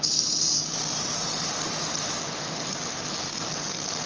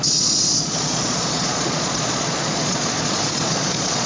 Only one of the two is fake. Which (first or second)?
second